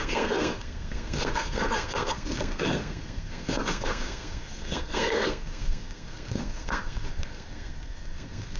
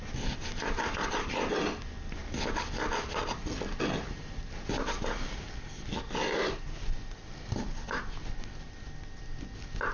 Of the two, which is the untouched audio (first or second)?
second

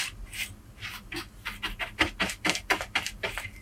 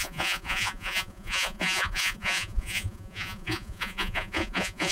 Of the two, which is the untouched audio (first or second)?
first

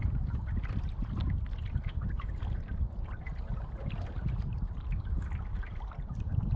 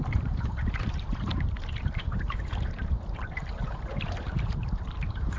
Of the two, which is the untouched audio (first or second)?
first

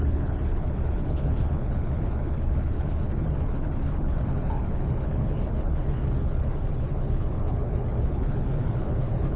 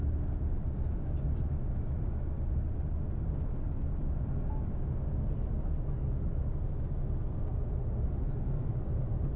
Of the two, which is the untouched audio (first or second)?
second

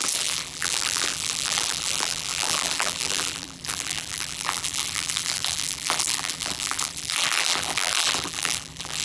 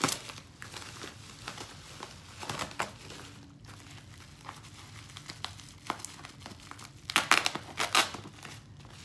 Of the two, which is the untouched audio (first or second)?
second